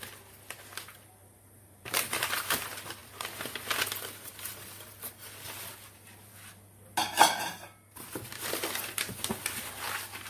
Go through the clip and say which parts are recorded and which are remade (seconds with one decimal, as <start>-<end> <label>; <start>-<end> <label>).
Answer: 0.0-1.2 recorded; 1.2-2.1 remade; 2.1-10.3 recorded